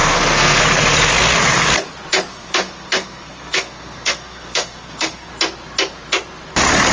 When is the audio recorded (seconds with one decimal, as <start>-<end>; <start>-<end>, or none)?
0.6-2.3; 5.3-6.9